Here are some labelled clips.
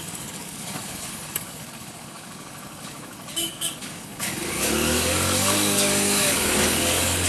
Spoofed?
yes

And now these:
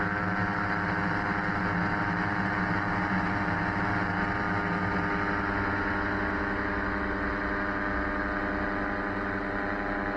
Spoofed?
no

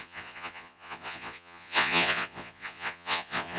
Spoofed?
yes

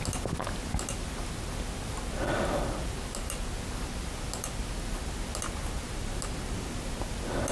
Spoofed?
no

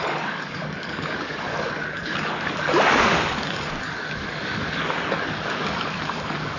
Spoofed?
yes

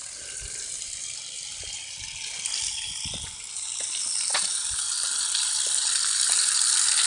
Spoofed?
no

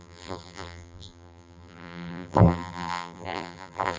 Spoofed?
yes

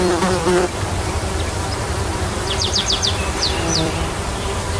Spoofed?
yes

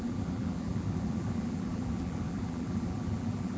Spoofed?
yes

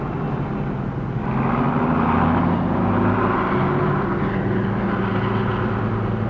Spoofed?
no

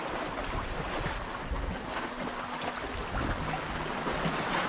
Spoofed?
no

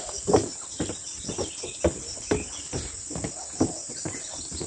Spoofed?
no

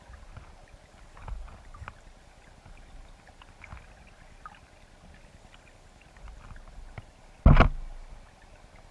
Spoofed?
no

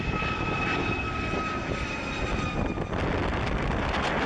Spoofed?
yes